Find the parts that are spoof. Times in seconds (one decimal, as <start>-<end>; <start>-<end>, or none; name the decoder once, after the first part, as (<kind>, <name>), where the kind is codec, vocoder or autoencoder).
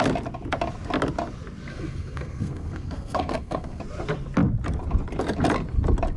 1.7-3.8 (codec, SNAC)